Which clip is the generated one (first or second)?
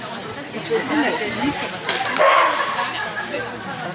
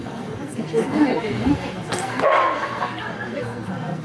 second